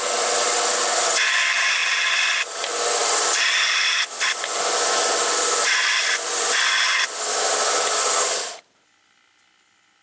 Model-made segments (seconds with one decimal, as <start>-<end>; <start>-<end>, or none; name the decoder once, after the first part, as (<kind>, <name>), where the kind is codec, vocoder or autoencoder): none